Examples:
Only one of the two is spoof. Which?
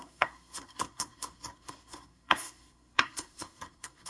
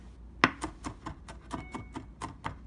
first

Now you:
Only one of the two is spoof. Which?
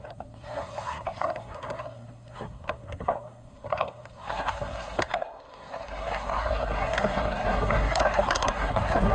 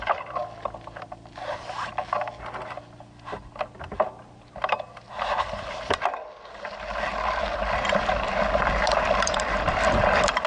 first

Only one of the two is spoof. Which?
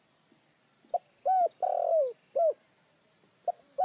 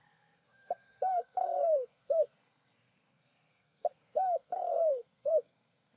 second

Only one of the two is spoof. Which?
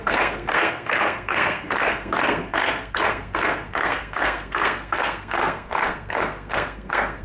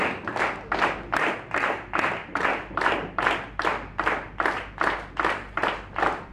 first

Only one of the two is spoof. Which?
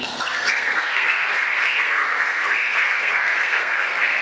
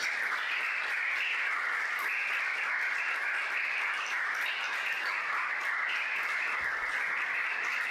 first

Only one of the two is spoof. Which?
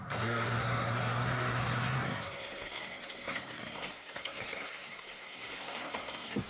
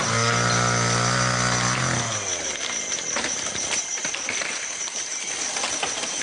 first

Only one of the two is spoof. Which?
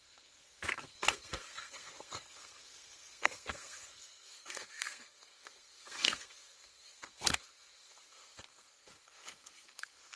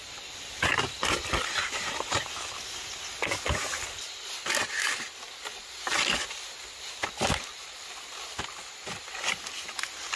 first